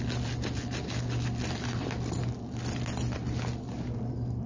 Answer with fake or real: real